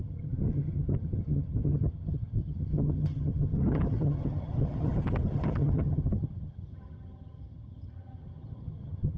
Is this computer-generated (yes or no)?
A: yes